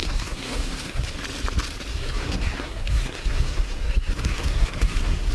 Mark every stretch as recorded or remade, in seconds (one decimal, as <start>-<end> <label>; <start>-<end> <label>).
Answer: 0.0-1.1 remade; 1.1-1.9 recorded; 1.9-5.3 remade